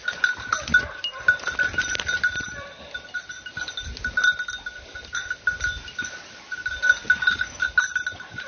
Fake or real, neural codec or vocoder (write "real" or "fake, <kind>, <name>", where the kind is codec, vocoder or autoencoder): real